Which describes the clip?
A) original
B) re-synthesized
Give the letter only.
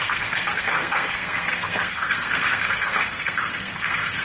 B